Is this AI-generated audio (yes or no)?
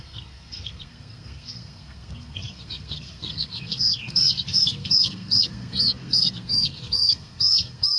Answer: yes